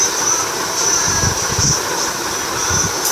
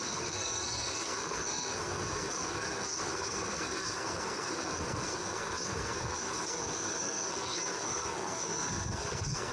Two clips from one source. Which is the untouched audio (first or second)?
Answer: first